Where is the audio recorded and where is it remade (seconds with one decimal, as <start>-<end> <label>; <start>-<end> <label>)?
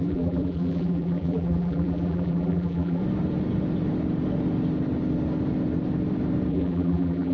0.0-3.0 remade; 3.0-6.5 recorded; 6.5-7.3 remade